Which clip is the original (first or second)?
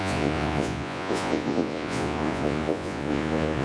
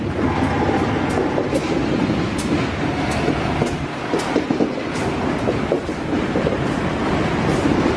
second